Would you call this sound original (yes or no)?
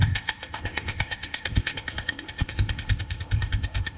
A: no